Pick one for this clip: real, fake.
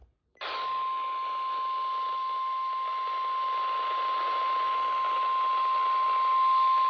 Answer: real